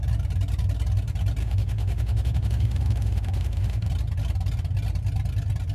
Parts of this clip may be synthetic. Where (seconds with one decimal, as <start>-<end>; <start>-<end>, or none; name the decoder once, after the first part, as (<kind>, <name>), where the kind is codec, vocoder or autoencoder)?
1.4-3.9 (autoencoder, DAC-VAE)